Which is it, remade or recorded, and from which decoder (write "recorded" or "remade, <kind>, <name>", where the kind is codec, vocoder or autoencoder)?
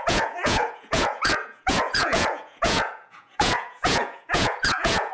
remade, vocoder, Vocos